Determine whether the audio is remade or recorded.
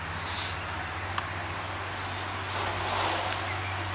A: recorded